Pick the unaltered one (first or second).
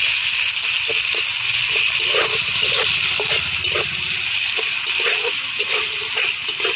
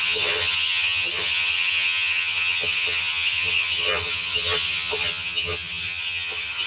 first